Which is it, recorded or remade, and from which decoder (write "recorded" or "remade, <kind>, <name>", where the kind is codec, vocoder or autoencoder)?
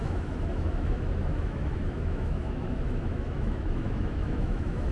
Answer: remade, autoencoder, DAC-VAE